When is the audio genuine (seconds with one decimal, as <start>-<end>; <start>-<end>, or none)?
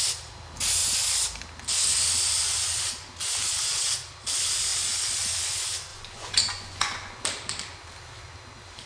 0.0-5.9; 7.2-8.9